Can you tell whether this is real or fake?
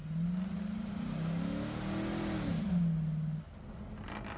real